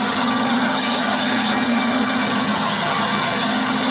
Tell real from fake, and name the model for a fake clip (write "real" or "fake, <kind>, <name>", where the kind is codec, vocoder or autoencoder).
fake, vocoder, HiFi-GAN